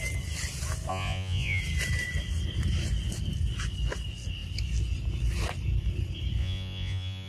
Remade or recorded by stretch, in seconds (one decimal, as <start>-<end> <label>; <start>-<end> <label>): 0.0-0.9 recorded; 0.9-1.6 remade; 1.6-6.4 recorded; 6.4-7.3 remade